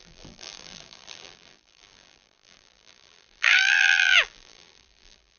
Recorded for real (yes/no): no